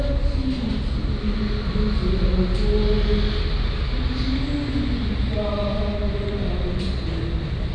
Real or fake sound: real